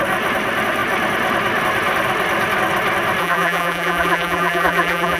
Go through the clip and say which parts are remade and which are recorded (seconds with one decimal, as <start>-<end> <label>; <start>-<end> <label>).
0.0-3.2 recorded; 3.2-5.2 remade